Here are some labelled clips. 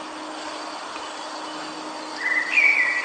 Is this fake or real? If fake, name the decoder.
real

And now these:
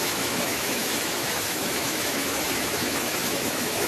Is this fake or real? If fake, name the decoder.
fake, autoencoder, DAC-VAE